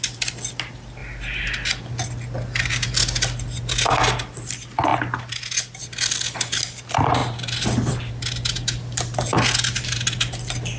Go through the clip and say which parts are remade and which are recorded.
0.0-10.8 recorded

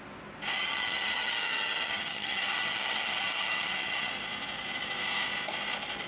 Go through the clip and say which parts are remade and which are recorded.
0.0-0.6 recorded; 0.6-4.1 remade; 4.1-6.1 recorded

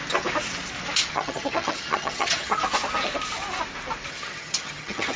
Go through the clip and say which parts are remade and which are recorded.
0.0-1.1 recorded; 1.1-2.6 remade; 2.6-4.1 recorded; 4.1-5.2 remade

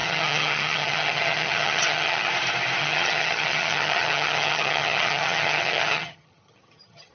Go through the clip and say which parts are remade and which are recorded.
0.0-2.3 remade; 2.3-2.8 recorded; 2.8-7.1 remade